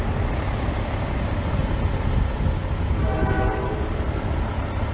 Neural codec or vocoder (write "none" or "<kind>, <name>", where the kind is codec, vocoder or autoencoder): none